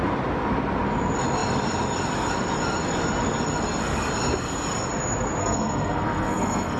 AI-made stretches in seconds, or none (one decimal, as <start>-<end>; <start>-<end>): 5.4-6.8